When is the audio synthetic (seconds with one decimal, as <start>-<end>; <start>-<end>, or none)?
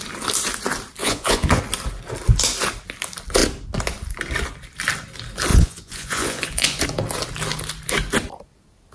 1.0-1.6; 5.5-6.8